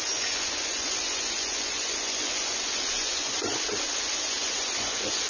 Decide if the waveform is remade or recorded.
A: remade